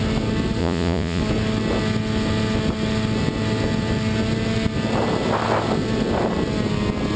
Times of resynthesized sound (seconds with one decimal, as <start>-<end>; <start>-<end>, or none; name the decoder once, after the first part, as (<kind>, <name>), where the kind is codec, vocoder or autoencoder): 0.6-1.2 (vocoder, Vocos)